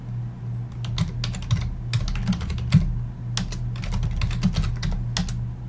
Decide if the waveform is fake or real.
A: real